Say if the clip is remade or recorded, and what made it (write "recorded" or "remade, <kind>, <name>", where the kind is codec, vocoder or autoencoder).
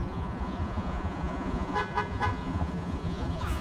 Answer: remade, vocoder, Vocos